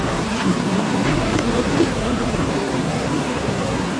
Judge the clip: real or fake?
fake